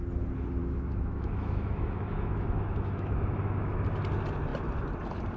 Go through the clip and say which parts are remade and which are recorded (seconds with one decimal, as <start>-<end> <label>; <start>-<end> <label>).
0.0-0.6 recorded; 0.6-3.8 remade; 3.8-5.4 recorded